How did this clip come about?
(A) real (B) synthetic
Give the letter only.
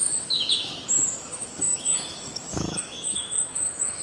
B